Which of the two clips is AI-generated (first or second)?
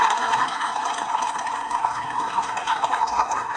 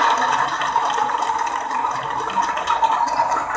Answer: first